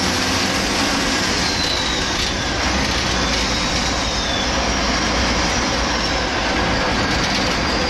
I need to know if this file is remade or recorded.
recorded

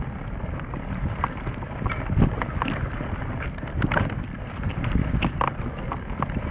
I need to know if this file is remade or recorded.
recorded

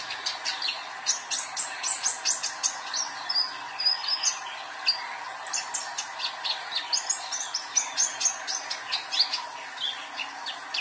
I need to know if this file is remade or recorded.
recorded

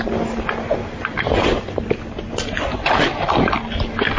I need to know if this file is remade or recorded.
recorded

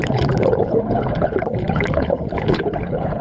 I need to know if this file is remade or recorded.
remade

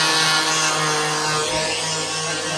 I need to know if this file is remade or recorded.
recorded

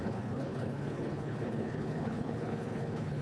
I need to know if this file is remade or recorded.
remade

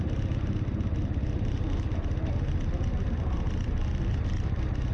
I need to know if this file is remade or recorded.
recorded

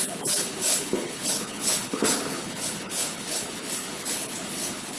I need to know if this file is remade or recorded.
remade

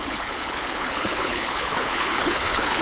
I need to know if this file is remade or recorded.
remade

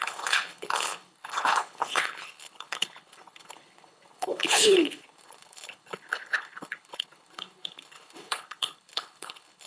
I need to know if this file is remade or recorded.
remade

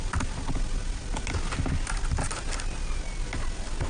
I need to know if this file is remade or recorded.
recorded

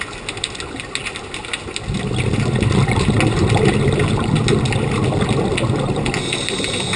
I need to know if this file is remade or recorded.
recorded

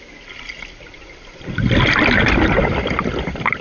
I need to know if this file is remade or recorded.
recorded